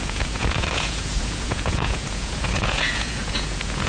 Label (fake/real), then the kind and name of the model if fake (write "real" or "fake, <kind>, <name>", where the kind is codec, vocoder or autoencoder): fake, vocoder, Vocos